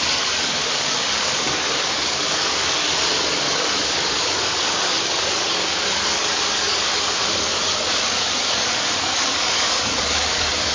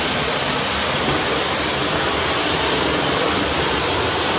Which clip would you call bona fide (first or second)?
second